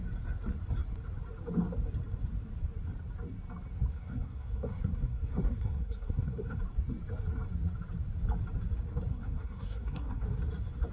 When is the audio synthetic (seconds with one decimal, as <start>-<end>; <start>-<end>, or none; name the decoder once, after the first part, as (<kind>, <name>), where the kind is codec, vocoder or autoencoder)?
3.9-6.6 (codec, SNAC); 9.1-10.4